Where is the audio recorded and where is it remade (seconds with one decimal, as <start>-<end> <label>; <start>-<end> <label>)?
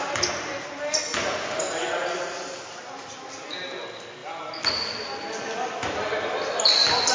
0.0-7.1 recorded